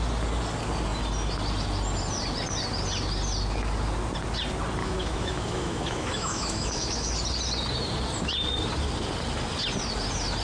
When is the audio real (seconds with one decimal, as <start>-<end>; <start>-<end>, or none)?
0.0-4.8; 7.1-10.4